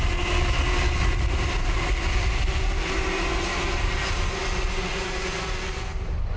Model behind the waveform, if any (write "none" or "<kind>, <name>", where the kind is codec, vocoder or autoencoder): none